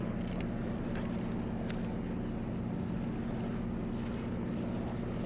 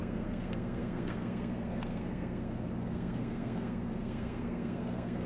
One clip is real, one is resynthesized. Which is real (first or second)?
first